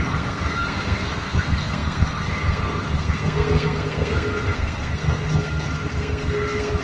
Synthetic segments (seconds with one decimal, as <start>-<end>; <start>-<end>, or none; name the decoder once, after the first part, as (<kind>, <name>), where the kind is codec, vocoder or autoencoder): 0.0-6.8 (codec, SNAC)